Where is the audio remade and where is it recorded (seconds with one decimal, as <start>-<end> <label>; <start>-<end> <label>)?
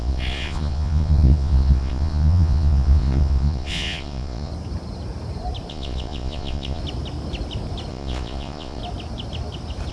0.0-4.5 remade; 4.5-5.7 recorded; 5.7-6.8 remade; 6.8-7.9 recorded; 7.9-8.8 remade; 8.8-9.9 recorded